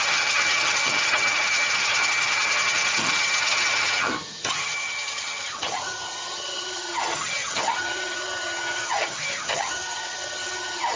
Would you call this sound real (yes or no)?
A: no